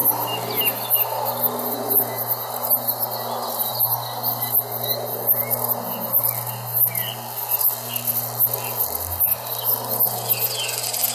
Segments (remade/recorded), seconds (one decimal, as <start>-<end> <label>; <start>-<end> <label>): 0.0-11.1 recorded